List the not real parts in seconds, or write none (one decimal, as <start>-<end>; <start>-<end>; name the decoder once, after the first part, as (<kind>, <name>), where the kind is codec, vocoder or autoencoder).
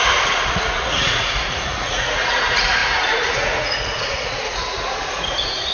0.0-5.7 (vocoder, Vocos)